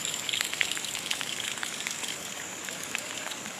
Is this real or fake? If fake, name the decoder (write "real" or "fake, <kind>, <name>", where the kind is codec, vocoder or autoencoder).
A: fake, codec, DAC